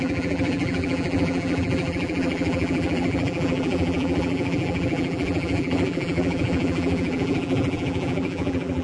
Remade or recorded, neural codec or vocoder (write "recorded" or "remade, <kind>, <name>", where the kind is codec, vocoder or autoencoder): remade, vocoder, BigVGAN v2